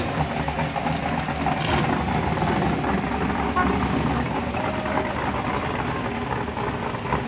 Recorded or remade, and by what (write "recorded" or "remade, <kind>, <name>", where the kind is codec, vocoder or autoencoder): recorded